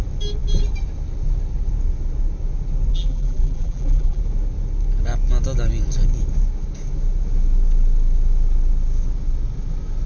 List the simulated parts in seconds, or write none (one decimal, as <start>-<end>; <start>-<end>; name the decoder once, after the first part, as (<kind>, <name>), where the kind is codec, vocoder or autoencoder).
2.9-4.2 (vocoder, BigVGAN v2)